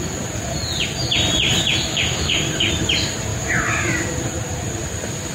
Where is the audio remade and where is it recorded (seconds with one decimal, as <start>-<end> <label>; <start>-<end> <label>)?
0.0-1.9 recorded; 1.9-2.7 remade; 2.7-5.3 recorded